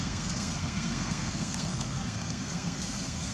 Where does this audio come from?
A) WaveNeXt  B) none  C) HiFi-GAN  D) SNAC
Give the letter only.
D